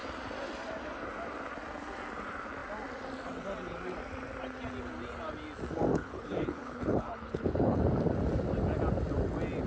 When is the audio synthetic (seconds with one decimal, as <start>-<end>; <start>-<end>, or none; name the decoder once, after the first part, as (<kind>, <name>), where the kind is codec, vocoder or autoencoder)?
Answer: 5.9-7.8 (codec, HILCodec)